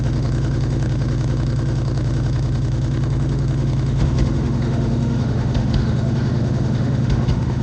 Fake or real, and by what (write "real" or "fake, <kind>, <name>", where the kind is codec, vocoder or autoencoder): fake, autoencoder, DAC-VAE